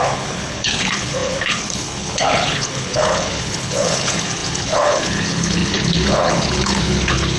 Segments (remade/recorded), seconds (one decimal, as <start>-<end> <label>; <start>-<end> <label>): 0.0-7.4 remade